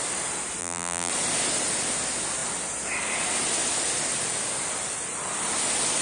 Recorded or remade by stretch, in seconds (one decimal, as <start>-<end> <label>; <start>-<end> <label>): 0.0-0.6 recorded; 0.6-1.1 remade; 1.1-6.0 recorded